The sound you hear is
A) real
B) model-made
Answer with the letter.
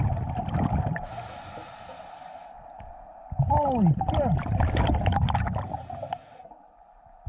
A